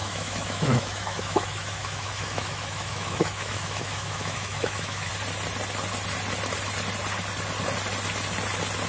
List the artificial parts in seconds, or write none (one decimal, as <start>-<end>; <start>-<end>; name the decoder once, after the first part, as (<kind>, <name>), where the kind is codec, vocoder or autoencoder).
0.0-5.1 (autoencoder, DAC-VAE)